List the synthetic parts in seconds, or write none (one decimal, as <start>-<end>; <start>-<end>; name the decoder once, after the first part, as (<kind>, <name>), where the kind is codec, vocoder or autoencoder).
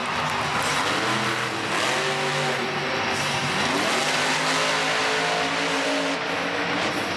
none